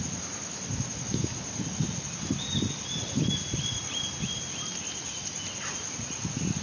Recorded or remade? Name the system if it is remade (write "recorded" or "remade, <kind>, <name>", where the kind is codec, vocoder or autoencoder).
recorded